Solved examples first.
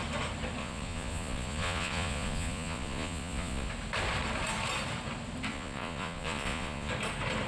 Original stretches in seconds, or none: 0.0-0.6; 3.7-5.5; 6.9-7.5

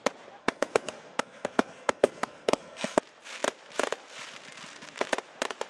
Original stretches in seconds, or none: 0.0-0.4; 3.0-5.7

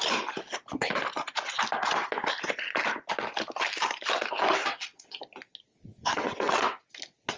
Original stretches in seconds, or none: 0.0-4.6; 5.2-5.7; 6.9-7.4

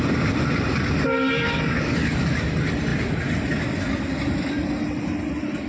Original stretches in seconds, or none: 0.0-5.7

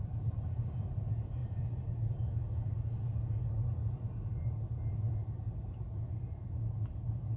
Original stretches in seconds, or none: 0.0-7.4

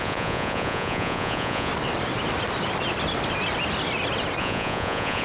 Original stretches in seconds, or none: 1.7-4.4